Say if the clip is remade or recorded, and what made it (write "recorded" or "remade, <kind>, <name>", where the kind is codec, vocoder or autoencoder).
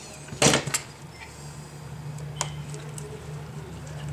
recorded